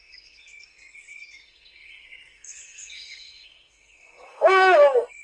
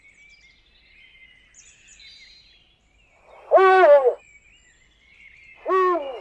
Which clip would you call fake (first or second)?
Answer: first